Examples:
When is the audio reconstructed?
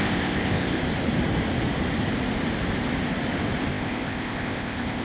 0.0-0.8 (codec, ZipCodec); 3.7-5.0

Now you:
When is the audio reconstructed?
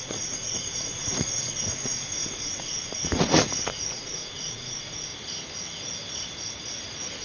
0.0-5.1 (vocoder, Vocos)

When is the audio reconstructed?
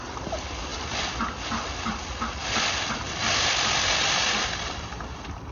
none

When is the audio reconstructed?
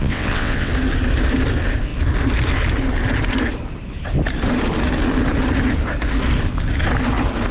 0.0-0.7 (vocoder, WaveNeXt)